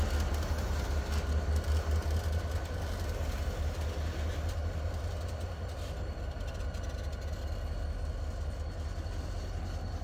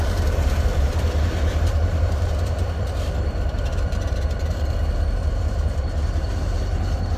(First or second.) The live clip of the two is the first